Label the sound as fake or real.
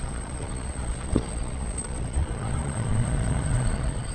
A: fake